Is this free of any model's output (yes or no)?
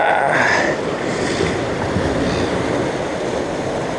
yes